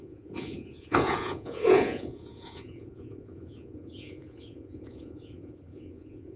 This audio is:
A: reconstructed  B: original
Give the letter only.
A